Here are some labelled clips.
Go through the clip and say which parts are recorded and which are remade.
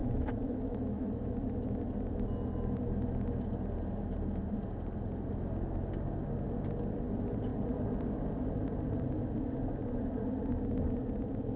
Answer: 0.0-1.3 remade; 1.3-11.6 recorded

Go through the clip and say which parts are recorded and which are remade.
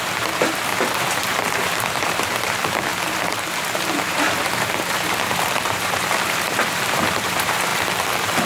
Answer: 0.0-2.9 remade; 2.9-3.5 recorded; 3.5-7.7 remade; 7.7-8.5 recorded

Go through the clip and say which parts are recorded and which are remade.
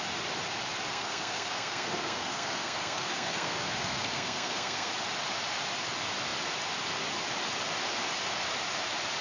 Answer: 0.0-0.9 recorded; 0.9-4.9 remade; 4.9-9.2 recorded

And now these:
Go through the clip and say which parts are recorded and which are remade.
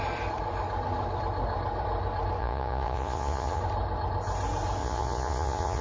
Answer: 0.0-2.4 recorded; 2.4-3.6 remade; 3.6-4.8 recorded; 4.8-5.8 remade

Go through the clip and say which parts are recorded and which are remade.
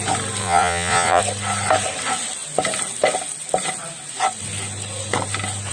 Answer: 0.0-0.4 recorded; 0.4-1.2 remade; 1.2-5.7 recorded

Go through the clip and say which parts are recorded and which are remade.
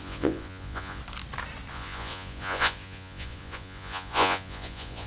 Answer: 0.0-1.0 remade; 1.0-1.7 recorded; 1.7-5.1 remade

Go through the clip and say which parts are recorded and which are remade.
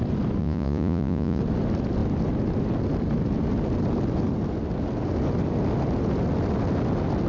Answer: 0.0-0.4 recorded; 0.4-1.4 remade; 1.4-7.3 recorded